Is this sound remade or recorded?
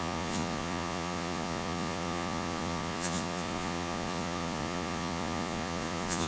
remade